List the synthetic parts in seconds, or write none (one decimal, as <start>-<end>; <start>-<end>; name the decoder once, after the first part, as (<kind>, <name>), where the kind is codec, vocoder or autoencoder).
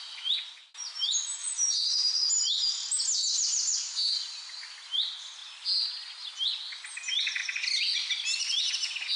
1.4-2.3 (vocoder, BigVGAN v2)